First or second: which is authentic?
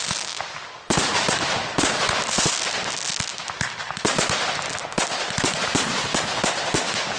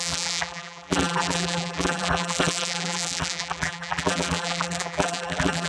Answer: first